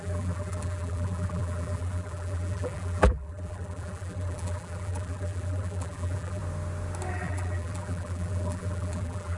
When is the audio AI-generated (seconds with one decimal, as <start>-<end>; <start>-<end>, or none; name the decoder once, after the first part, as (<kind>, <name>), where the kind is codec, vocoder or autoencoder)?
0.0-6.4 (vocoder, BigVGAN v2); 7.1-9.4